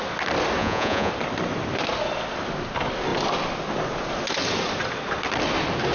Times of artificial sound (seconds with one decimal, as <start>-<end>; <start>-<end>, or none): 0.6-1.1